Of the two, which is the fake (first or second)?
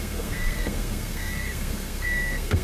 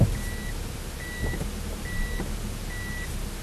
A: first